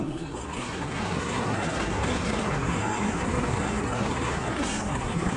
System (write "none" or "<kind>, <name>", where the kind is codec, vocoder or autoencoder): codec, SNAC